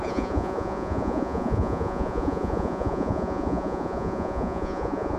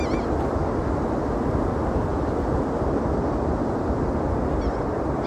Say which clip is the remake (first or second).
first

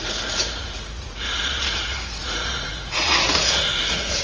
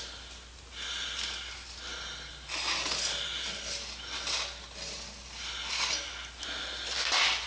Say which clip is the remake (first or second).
first